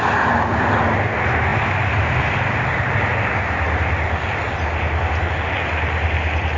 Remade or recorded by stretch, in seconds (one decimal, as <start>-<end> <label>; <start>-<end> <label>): 0.0-6.6 recorded